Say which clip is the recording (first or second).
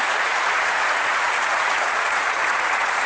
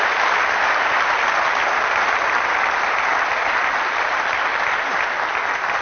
second